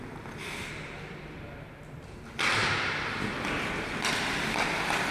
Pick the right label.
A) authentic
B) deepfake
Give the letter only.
A